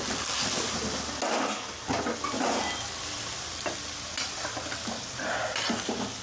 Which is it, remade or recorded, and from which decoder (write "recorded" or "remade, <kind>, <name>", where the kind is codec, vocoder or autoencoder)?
recorded